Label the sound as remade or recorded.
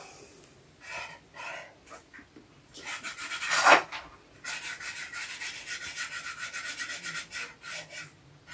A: recorded